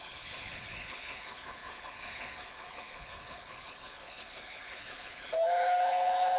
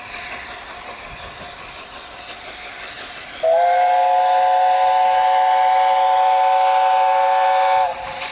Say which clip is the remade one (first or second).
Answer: first